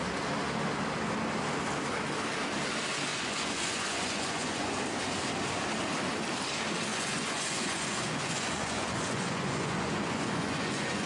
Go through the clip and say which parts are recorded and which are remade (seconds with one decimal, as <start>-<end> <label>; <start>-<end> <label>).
0.0-3.1 recorded; 3.1-4.8 remade; 4.8-6.9 recorded; 6.9-11.1 remade